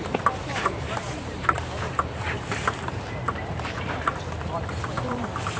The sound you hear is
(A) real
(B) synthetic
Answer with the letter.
B